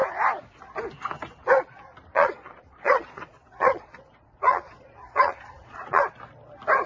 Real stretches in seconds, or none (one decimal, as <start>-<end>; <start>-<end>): 0.0-2.1; 6.0-6.9